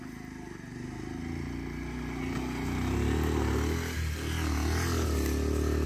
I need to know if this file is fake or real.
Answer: real